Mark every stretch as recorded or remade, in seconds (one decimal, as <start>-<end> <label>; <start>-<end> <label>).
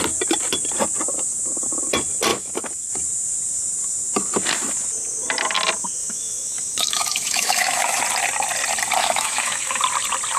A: 0.0-2.3 recorded; 2.3-2.9 remade; 2.9-6.0 recorded; 6.0-8.0 remade; 8.0-9.0 recorded; 9.0-9.8 remade; 9.8-10.4 recorded